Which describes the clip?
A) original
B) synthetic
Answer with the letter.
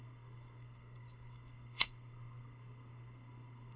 B